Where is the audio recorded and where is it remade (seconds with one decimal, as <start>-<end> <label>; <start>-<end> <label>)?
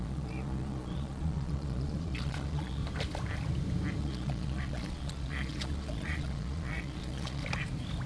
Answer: 0.0-2.8 remade; 2.8-4.0 recorded; 4.0-7.4 remade; 7.4-8.1 recorded